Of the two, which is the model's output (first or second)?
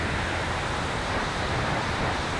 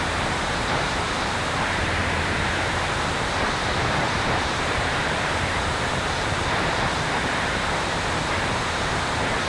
second